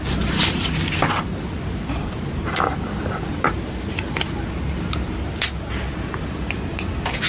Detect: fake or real real